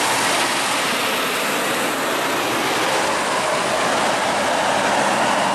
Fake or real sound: real